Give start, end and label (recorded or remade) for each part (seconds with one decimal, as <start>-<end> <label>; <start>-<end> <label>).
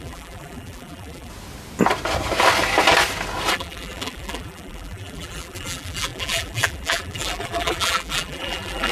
0.0-1.3 remade; 1.3-3.5 recorded; 3.5-8.9 remade